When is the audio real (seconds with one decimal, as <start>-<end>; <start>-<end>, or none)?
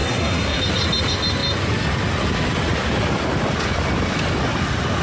0.6-5.0